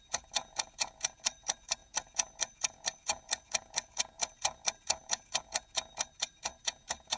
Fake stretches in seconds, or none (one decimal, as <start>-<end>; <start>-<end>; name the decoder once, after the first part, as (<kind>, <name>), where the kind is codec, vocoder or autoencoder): 0.0-7.2 (vocoder, Vocos)